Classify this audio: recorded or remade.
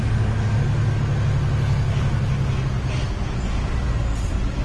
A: recorded